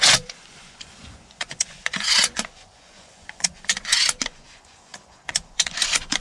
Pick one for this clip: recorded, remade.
remade